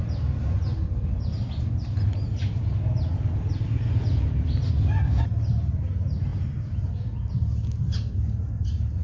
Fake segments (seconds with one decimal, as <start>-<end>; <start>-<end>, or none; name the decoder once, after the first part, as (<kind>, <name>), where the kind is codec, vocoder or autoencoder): none